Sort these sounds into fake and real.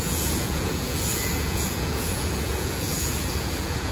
fake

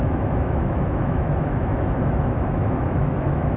fake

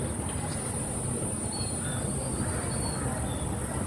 real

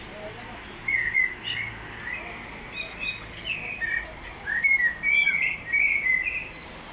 real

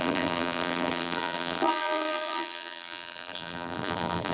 fake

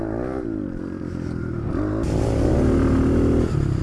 real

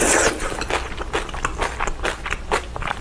real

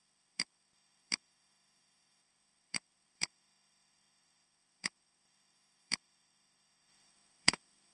fake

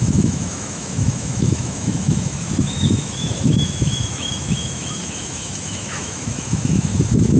fake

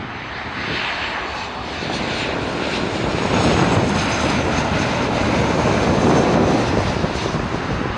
real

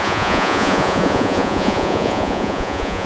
fake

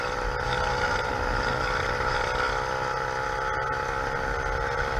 real